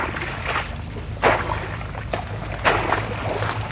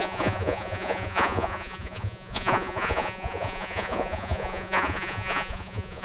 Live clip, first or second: first